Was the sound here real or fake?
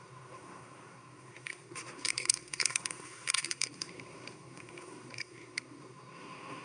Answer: fake